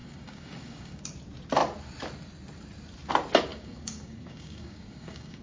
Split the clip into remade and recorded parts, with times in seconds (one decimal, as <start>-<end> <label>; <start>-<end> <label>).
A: 0.0-1.0 remade; 1.0-3.5 recorded; 3.5-5.4 remade